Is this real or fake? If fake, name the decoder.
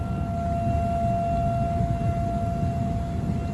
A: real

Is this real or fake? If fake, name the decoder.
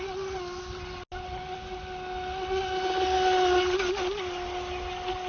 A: real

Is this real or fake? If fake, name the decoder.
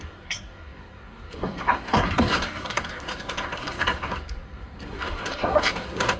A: fake, codec, SNAC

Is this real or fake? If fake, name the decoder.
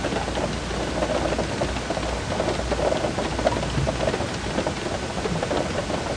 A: real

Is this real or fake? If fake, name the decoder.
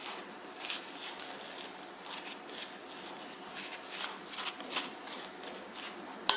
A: real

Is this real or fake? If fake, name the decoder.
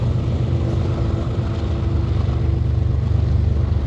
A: real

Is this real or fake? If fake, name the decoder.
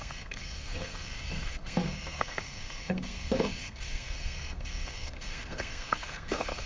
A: fake, codec, SNAC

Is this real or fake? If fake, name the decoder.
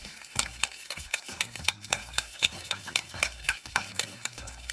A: fake, codec, SNAC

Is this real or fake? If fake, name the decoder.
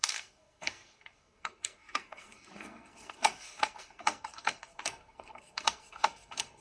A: fake, codec, SNAC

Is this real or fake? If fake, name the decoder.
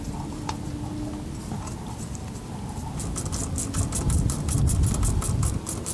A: real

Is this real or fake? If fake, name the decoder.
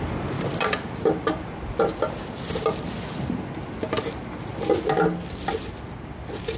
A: real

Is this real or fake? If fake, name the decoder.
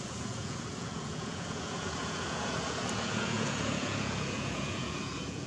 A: fake, vocoder, Vocos